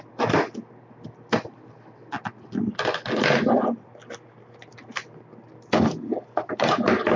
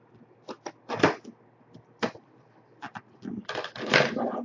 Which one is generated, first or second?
second